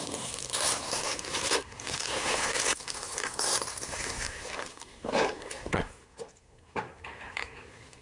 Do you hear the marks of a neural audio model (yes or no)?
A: yes